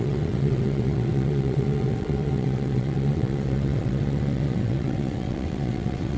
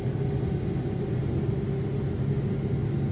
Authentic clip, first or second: second